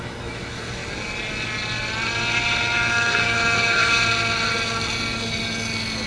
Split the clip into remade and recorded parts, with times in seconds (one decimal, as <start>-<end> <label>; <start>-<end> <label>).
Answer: 0.0-0.8 remade; 0.8-2.6 recorded; 2.6-3.8 remade; 3.8-6.1 recorded

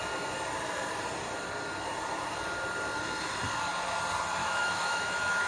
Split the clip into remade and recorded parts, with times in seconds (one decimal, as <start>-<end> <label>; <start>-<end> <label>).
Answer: 0.0-4.4 recorded; 4.4-5.5 remade

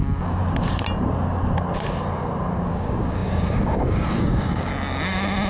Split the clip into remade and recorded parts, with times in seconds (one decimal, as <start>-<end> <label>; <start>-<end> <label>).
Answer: 0.0-0.4 remade; 0.4-2.7 recorded; 2.7-4.7 remade; 4.7-5.5 recorded

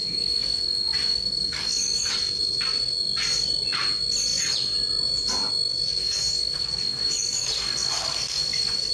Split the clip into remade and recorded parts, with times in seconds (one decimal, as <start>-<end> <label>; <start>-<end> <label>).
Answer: 0.0-2.1 remade; 2.1-6.0 recorded; 6.0-8.9 remade

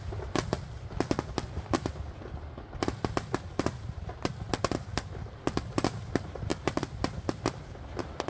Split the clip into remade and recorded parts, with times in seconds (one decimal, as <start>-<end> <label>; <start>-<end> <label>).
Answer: 0.0-8.3 recorded